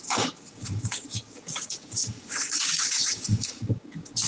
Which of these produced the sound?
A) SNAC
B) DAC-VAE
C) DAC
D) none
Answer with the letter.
C